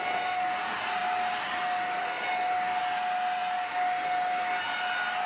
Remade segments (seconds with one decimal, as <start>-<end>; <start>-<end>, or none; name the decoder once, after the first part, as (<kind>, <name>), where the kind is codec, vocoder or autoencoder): none